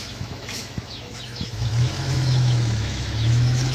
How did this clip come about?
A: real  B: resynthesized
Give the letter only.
B